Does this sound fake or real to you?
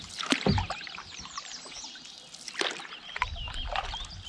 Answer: real